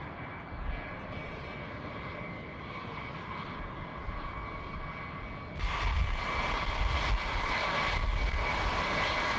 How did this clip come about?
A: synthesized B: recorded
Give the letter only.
B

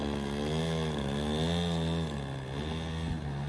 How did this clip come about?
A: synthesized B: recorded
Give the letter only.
B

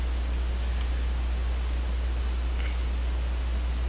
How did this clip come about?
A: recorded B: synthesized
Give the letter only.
A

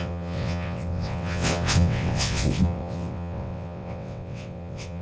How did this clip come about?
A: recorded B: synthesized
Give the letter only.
B